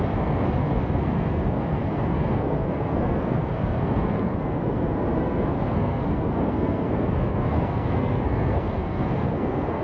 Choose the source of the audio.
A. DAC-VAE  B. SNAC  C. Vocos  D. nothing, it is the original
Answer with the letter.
B